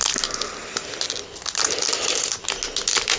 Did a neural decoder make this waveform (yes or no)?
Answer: no